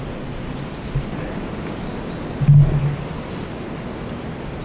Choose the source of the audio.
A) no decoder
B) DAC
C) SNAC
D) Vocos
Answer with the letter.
A